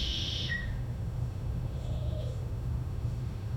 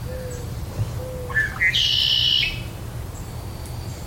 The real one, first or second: second